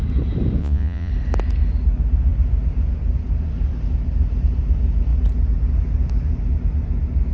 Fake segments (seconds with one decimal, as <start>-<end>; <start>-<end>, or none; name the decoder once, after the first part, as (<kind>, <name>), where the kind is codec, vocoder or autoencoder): 0.6-1.1 (vocoder, Vocos)